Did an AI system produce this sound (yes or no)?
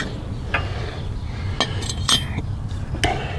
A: no